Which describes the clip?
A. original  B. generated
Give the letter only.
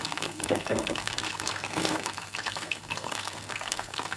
B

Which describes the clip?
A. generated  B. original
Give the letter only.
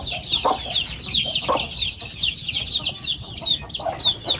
B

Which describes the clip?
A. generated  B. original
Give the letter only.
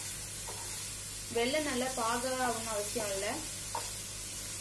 B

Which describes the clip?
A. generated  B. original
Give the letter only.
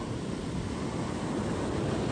B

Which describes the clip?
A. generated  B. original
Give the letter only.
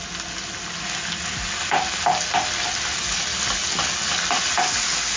B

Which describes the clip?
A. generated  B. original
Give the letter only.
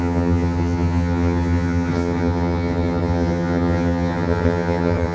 A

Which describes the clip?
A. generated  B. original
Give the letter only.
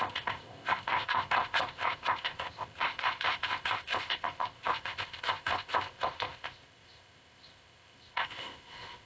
A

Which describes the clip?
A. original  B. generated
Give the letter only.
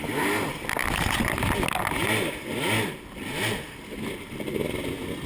A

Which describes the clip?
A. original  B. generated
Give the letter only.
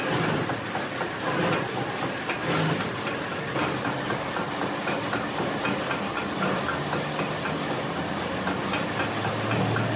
A